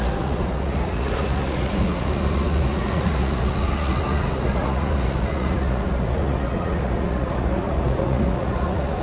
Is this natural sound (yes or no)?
no